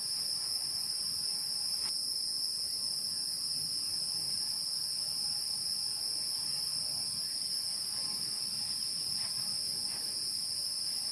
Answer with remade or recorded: recorded